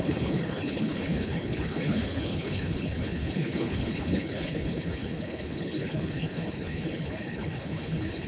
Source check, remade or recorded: remade